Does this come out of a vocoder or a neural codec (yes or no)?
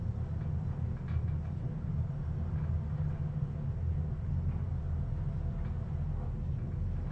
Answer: no